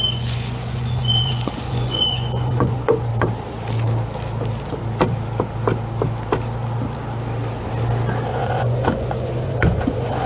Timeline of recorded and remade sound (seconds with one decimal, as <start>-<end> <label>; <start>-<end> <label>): 0.0-3.1 remade; 3.1-8.3 recorded; 8.3-10.3 remade